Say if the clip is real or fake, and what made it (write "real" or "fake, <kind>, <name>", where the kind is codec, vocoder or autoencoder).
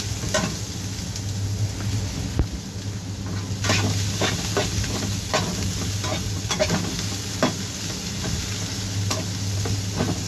real